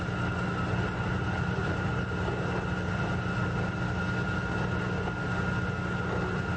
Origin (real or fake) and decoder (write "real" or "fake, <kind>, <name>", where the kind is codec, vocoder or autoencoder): real